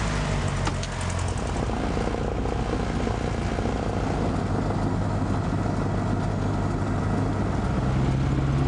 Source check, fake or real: real